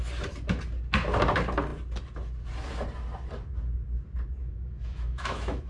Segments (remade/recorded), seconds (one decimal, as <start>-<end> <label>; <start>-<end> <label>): 0.0-4.4 recorded; 4.4-5.7 remade